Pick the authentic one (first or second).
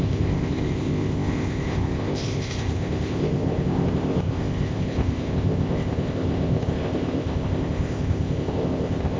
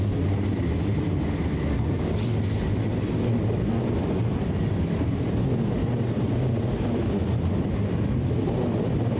second